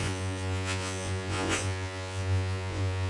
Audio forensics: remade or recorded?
remade